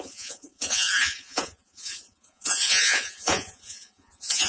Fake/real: fake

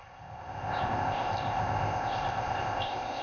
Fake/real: fake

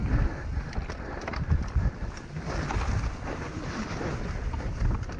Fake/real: real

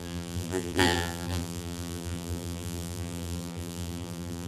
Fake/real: fake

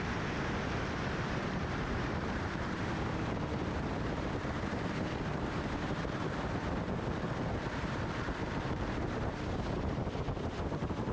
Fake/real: fake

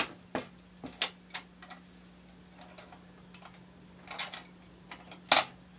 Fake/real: real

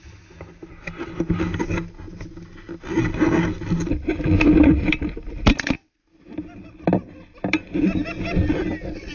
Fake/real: real